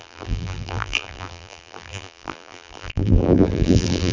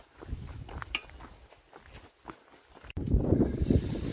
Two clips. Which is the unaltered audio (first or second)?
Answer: second